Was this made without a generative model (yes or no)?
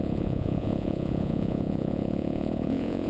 no